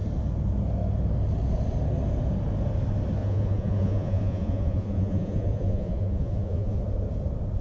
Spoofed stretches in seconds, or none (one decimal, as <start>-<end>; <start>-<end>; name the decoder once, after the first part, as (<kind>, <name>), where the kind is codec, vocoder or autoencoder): 3.2-6.8 (vocoder, Vocos)